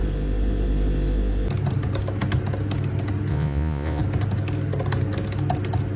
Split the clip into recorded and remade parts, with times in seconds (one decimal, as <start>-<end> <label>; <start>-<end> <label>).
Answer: 0.0-3.3 recorded; 3.3-4.0 remade; 4.0-6.0 recorded

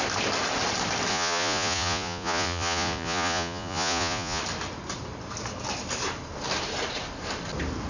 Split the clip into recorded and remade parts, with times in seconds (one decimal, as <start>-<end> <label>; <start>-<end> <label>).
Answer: 0.0-1.1 recorded; 1.1-4.4 remade; 4.4-7.9 recorded

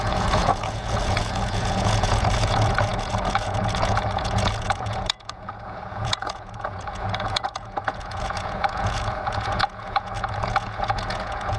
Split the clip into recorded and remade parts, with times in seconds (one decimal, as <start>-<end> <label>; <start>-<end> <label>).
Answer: 0.0-11.6 remade